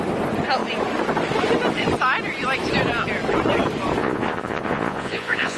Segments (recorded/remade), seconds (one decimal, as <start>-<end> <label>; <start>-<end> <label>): 0.0-4.0 recorded; 4.0-5.6 remade